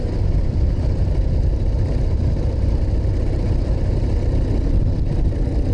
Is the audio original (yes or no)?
yes